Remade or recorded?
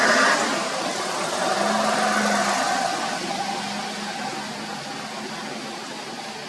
recorded